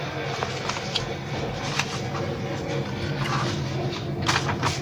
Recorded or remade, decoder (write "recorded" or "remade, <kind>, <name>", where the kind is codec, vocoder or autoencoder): recorded